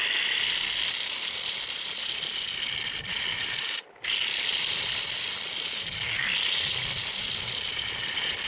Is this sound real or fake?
real